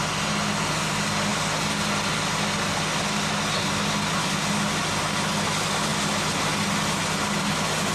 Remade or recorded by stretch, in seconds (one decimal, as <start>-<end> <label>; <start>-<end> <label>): 0.0-7.9 recorded